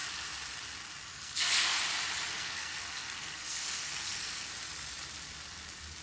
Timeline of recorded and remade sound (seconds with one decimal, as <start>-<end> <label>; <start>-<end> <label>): 0.0-1.1 recorded; 1.1-1.8 remade; 1.8-2.3 recorded; 2.3-4.5 remade; 4.5-6.0 recorded

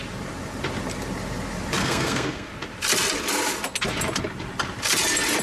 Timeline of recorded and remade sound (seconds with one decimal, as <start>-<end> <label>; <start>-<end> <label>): 0.0-1.8 recorded; 1.8-2.5 remade; 2.5-5.4 recorded

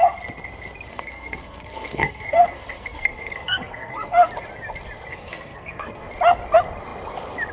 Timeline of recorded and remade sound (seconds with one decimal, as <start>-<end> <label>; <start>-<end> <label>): 0.0-0.9 recorded; 0.9-4.3 remade; 4.3-5.1 recorded; 5.1-6.1 remade; 6.1-7.5 recorded

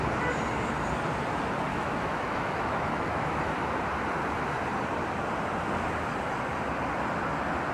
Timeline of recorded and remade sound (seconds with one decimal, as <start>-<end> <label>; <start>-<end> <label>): 0.0-1.7 recorded; 1.7-3.5 remade; 3.5-7.7 recorded

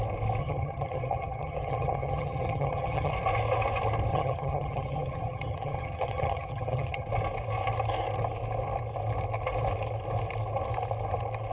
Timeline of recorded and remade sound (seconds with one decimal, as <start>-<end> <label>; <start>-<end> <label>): 0.0-0.4 recorded; 0.4-3.1 remade; 3.1-4.1 recorded; 4.1-7.1 remade; 7.1-11.5 recorded

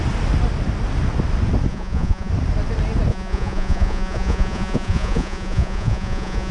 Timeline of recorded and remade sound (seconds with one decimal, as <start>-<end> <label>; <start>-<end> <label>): 0.0-1.7 recorded; 1.7-2.3 remade; 2.3-3.1 recorded; 3.1-6.5 remade

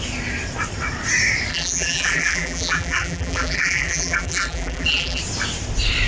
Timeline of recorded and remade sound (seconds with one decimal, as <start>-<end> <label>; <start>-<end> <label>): 0.0-1.5 recorded; 1.5-5.2 remade; 5.2-6.1 recorded